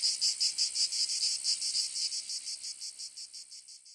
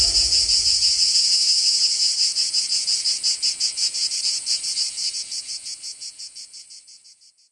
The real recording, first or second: first